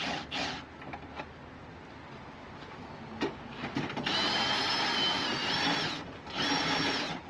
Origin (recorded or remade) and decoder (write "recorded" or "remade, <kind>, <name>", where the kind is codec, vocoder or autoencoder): recorded